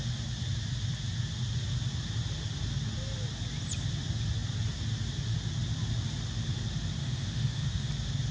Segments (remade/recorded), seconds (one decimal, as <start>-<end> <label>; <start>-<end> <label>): 0.0-7.0 recorded; 7.0-7.9 remade; 7.9-8.3 recorded

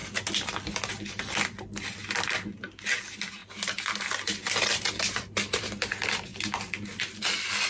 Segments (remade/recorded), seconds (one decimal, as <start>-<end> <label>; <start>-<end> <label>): 0.0-7.7 recorded